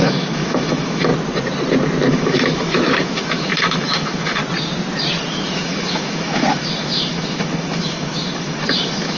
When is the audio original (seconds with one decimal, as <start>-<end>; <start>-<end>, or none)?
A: 1.1-2.1; 4.4-5.3